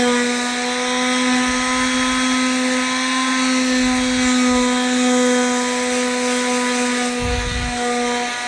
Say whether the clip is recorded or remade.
recorded